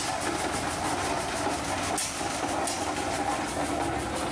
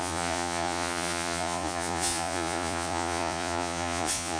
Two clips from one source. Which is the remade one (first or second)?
second